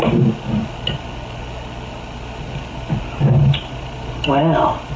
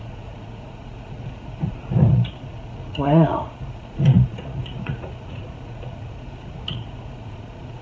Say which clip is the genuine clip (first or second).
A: first